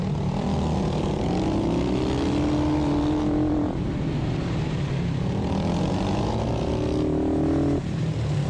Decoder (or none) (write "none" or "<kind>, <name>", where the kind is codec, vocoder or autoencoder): none